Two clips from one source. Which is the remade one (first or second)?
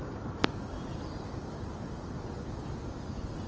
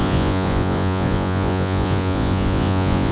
second